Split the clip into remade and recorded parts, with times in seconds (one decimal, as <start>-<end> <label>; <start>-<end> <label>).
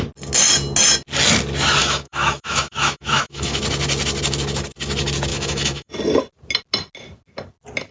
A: 0.0-1.8 recorded; 1.8-3.6 remade; 3.6-5.3 recorded; 5.3-5.9 remade; 5.9-7.9 recorded